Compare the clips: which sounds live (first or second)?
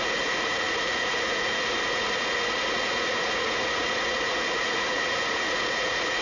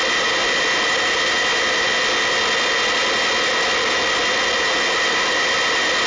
second